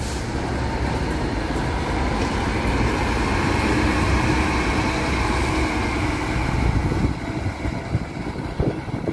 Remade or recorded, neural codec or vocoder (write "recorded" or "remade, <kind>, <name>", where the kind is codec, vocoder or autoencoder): recorded